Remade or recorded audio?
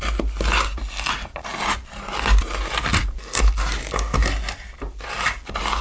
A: recorded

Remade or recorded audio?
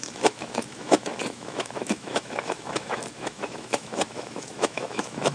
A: remade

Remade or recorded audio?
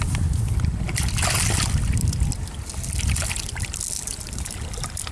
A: recorded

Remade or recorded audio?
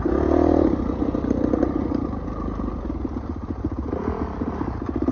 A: recorded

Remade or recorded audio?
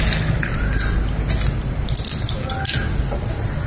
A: recorded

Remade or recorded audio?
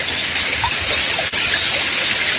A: recorded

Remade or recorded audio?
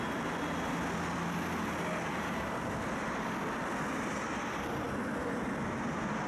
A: recorded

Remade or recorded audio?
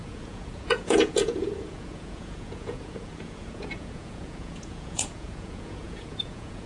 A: remade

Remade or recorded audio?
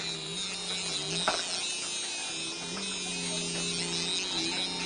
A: recorded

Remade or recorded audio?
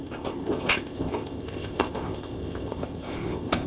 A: remade